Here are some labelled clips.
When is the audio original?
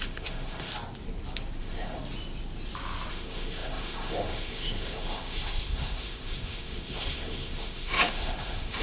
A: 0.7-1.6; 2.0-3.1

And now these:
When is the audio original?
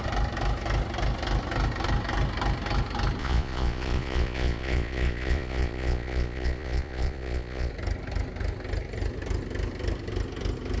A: 0.0-3.2; 7.7-10.8